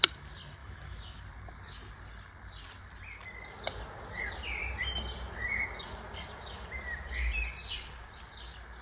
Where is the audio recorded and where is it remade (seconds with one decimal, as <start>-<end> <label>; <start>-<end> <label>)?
0.0-0.6 recorded; 0.6-1.2 remade; 1.2-8.8 recorded